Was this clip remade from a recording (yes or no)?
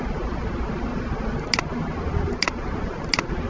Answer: no